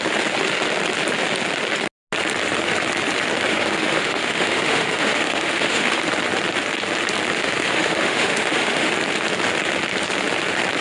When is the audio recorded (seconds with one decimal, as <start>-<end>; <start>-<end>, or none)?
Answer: 0.0-3.5; 6.0-7.4; 8.9-10.8